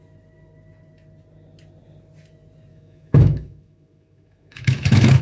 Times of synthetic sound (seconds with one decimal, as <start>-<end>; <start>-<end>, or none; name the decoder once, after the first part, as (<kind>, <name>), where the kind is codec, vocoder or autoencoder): 2.7-5.2 (autoencoder, DAC-VAE)